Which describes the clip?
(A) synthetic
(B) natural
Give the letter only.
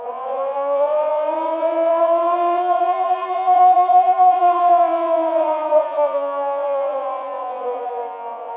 A